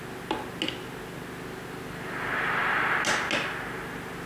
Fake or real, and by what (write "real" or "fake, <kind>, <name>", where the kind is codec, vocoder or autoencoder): real